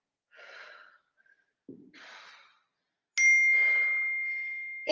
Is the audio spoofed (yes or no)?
no